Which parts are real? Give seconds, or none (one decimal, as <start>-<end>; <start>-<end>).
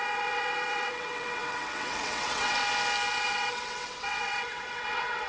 2.6-3.1